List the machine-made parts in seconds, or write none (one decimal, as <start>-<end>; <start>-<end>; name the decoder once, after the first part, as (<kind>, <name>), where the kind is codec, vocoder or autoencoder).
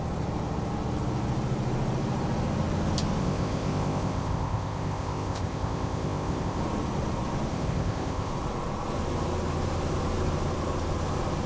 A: 3.2-6.6 (codec, ZipCodec); 7.5-8.3